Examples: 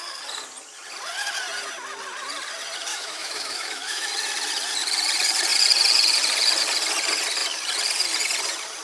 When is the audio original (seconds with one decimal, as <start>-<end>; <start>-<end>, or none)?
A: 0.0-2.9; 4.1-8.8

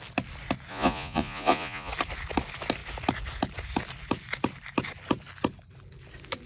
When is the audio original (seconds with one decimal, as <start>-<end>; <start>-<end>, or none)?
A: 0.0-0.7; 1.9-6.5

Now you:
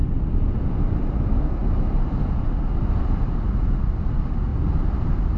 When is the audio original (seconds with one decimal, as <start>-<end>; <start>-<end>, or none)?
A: 0.0-5.4

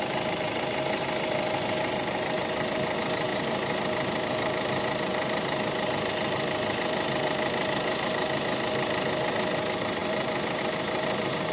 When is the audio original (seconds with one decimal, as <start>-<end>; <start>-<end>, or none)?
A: 0.0-3.3; 6.1-10.0; 10.6-11.5

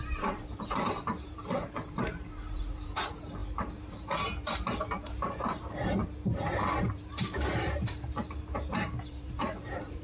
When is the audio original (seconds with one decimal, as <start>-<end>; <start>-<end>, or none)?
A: 6.0-6.8

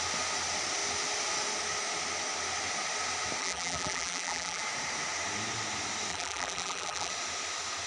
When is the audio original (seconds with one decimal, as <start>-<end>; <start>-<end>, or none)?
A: 0.0-3.4; 4.6-6.1; 7.1-7.9

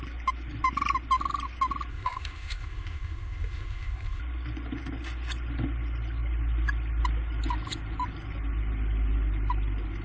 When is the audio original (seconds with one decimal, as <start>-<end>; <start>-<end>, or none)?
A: 0.0-1.9; 4.2-10.0

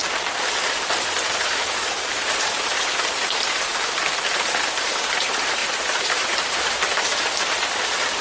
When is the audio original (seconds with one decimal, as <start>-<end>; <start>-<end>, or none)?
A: 0.0-1.0; 3.7-4.3